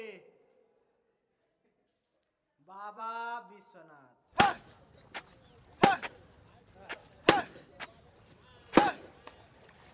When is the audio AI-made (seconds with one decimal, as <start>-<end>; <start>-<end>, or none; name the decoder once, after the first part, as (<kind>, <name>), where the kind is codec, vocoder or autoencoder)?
1.9-6.8 (vocoder, BigVGAN v2)